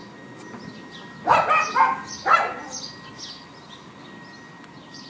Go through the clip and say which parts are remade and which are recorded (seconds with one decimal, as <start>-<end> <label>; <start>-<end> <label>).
0.0-5.1 recorded